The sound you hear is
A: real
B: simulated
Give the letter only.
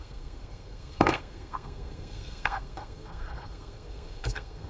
B